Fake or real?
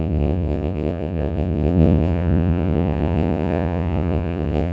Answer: fake